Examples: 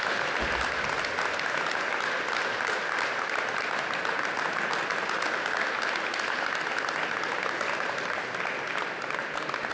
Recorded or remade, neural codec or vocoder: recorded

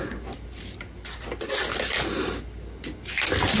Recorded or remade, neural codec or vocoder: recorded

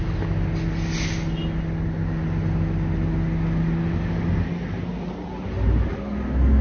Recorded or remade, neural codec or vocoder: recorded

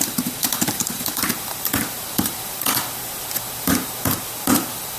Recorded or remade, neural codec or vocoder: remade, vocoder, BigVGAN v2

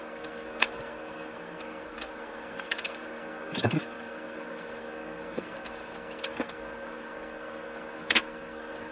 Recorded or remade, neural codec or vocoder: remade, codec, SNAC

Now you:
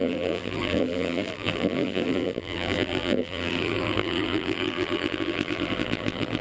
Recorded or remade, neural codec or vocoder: remade, vocoder, BigVGAN v2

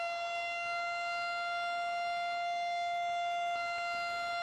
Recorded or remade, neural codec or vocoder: recorded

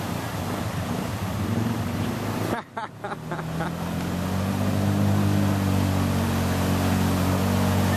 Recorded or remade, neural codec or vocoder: recorded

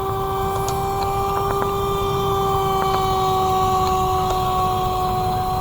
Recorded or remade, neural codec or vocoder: recorded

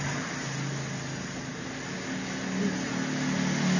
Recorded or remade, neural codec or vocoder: recorded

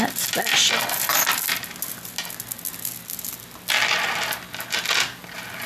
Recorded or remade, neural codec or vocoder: recorded